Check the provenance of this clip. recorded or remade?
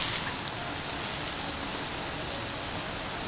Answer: recorded